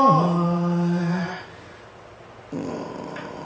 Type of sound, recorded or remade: recorded